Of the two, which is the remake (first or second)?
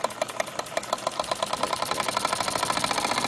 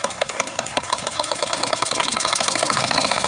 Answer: second